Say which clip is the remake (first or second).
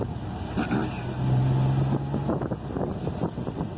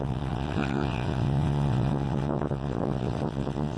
second